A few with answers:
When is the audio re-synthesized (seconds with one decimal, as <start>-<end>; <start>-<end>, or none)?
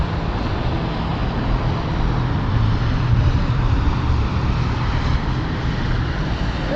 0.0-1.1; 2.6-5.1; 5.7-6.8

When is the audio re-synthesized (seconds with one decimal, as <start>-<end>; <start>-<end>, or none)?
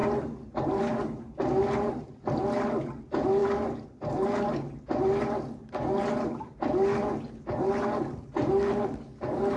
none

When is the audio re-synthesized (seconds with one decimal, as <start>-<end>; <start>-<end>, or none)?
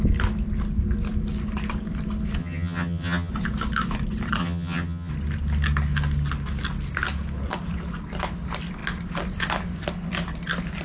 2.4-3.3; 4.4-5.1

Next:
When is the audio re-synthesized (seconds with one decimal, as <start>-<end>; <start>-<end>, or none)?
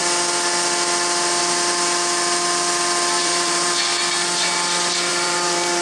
3.2-3.8; 5.1-5.8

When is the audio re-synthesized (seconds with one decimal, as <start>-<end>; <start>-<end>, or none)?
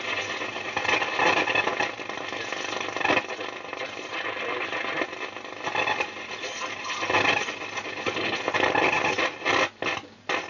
1.7-2.2; 3.7-4.2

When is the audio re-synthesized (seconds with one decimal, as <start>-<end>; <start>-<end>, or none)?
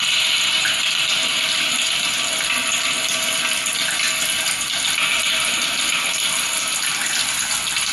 0.0-7.9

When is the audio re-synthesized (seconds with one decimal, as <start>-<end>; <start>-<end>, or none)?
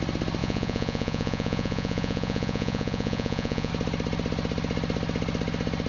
0.4-3.7